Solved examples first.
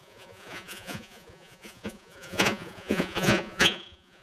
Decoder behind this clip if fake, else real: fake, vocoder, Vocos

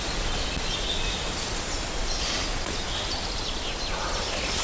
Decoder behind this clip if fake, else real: real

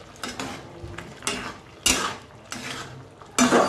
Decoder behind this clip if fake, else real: real